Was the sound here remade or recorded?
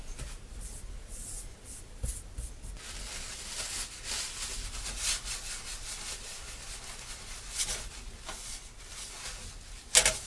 recorded